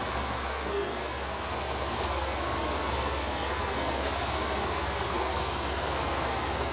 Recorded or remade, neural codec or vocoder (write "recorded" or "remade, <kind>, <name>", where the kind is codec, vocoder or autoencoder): remade, codec, SNAC